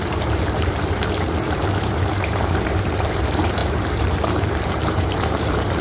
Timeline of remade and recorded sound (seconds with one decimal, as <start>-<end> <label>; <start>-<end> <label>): 0.0-5.8 remade

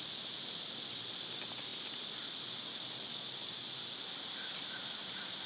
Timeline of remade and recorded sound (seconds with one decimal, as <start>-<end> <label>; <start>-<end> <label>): 0.0-1.7 remade; 1.7-3.3 recorded; 3.3-5.5 remade